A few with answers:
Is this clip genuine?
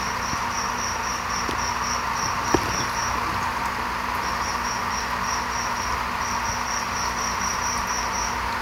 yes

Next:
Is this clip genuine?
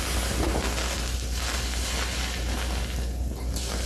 yes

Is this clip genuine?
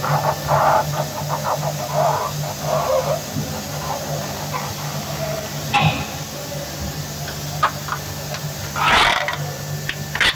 yes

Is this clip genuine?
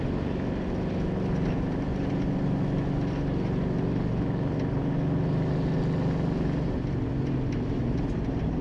yes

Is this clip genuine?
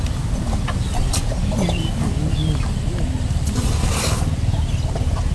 yes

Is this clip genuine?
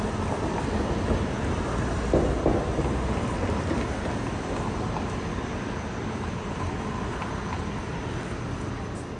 yes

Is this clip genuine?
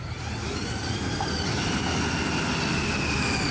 yes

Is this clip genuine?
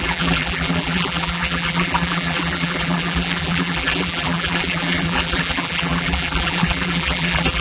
no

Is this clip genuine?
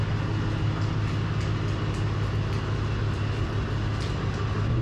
yes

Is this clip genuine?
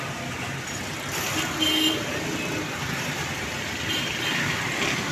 yes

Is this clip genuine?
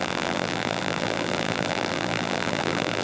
no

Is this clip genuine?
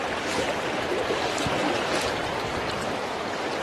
no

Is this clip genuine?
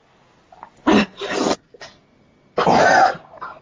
yes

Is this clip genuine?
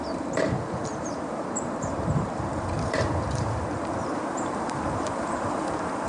no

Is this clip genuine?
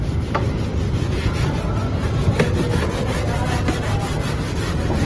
yes